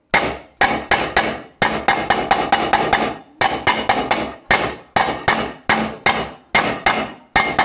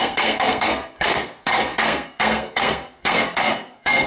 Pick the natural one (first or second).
first